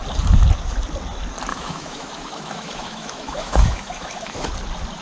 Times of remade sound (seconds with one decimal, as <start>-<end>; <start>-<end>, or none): 1.5-4.5